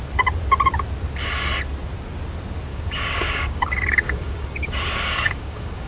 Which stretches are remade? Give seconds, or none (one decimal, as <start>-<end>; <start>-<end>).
2.7-5.9